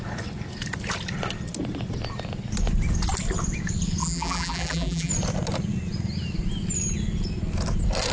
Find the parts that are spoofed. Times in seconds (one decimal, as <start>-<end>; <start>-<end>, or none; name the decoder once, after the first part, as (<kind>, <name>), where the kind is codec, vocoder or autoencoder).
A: 4.0-5.1 (vocoder, BigVGAN v2)